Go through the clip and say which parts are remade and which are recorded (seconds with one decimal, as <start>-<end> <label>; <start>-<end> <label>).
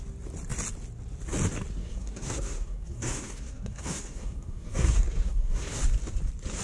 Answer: 0.0-1.8 recorded; 1.8-5.8 remade; 5.8-6.6 recorded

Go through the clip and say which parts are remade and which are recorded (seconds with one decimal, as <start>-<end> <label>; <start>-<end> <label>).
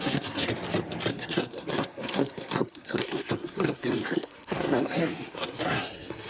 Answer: 0.0-0.5 remade; 0.5-1.1 recorded; 1.1-6.3 remade